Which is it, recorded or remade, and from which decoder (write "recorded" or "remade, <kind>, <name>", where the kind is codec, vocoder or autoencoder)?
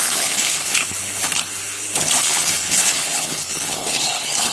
remade, codec, HILCodec